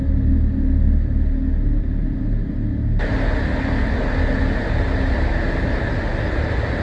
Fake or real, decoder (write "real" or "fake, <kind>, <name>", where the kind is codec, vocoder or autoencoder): real